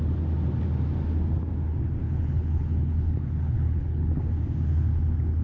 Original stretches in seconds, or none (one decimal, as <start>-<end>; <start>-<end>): 0.0-2.0; 4.1-5.4